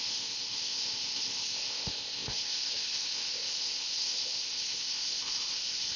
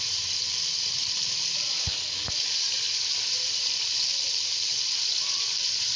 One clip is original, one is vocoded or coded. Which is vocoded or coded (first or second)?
first